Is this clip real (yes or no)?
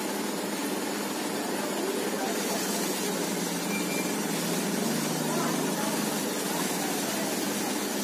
yes